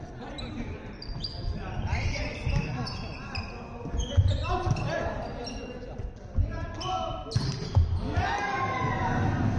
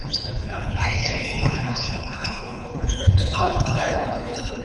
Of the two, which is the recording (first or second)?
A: first